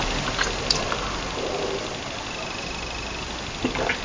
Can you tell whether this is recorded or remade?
recorded